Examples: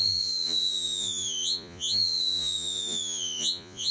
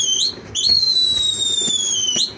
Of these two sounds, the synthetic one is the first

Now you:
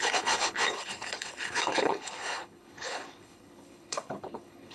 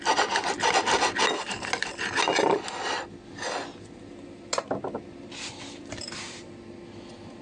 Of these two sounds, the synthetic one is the first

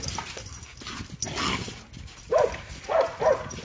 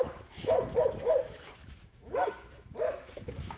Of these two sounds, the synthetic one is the second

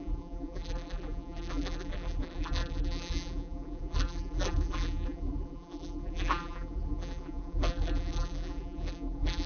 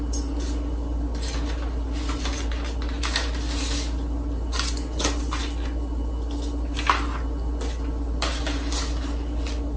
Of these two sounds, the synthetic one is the first